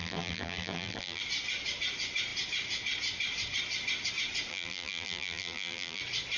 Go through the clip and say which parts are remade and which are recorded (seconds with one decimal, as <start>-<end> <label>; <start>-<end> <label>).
0.0-1.2 remade; 1.2-4.5 recorded; 4.5-6.0 remade; 6.0-6.4 recorded